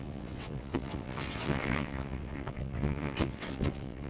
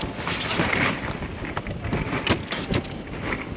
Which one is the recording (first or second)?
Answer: second